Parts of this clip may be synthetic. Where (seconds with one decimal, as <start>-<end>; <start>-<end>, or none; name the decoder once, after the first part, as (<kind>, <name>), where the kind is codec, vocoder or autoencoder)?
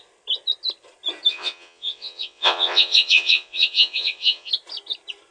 1.3-4.5 (vocoder, WaveNeXt)